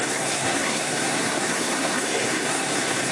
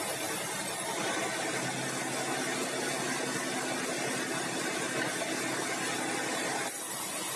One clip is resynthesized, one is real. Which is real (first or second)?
second